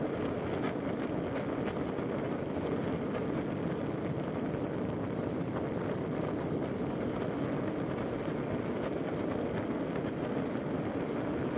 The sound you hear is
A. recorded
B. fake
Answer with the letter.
A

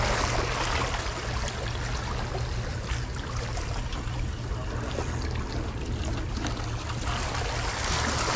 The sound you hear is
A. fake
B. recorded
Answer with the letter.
B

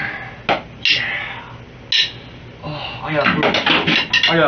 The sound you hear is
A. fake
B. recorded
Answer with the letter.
B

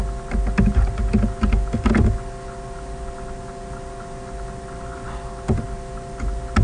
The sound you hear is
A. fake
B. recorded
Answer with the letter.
B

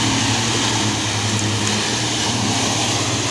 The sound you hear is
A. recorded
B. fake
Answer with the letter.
A